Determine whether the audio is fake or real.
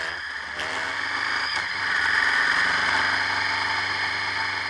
real